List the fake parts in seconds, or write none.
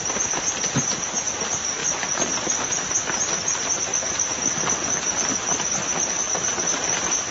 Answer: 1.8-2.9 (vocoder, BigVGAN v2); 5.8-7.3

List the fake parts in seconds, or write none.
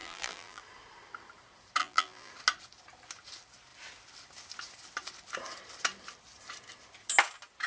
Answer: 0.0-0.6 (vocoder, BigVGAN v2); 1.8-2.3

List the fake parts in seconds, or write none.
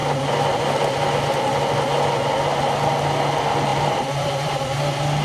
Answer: 3.7-4.5 (vocoder, BigVGAN v2)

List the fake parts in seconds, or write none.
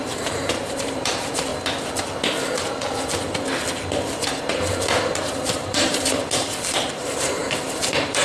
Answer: 0.0-1.5 (vocoder, BigVGAN v2); 5.4-6.2; 6.9-8.2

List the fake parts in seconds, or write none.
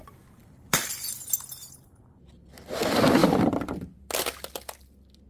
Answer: 0.4-1.1 (vocoder, BigVGAN v2); 3.2-3.8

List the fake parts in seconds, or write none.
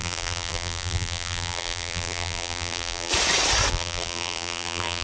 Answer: 0.0-3.1 (vocoder, BigVGAN v2); 3.7-5.0